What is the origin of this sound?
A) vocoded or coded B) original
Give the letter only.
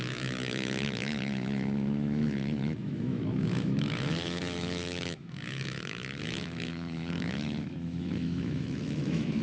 A